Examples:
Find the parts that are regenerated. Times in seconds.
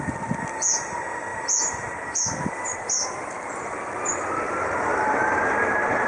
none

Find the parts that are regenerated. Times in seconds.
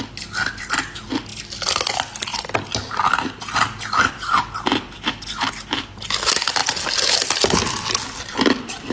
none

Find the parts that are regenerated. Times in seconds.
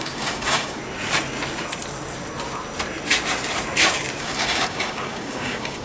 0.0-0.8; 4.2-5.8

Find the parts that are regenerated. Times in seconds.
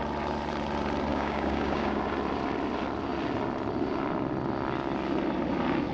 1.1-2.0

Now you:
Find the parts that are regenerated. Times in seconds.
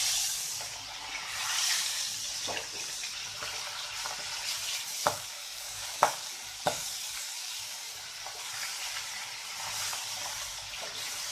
5.0-7.9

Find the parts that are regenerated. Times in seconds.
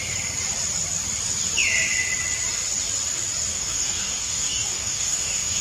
3.5-5.6